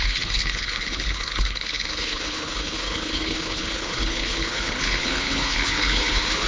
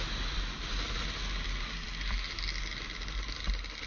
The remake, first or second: first